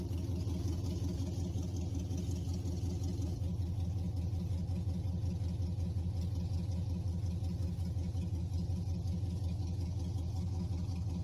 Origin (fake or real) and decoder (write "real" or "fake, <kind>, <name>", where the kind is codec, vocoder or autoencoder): real